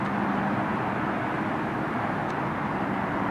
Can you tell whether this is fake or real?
real